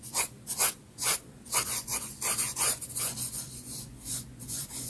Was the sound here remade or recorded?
remade